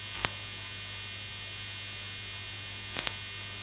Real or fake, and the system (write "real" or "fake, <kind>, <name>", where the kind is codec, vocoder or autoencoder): real